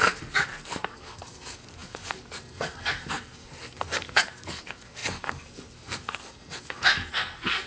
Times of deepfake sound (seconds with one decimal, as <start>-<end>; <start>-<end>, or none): 0.0-7.7